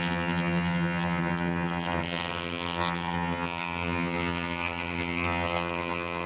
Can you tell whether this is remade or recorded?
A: remade